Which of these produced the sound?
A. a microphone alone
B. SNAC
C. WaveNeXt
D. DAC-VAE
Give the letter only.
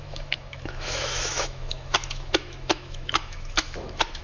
D